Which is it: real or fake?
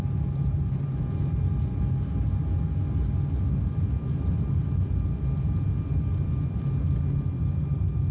real